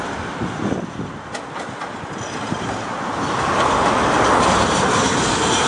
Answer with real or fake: real